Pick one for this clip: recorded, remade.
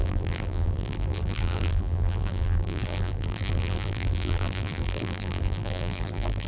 remade